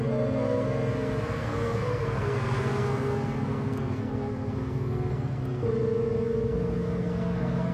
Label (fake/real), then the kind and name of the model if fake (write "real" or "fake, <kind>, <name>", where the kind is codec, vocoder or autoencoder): fake, codec, SNAC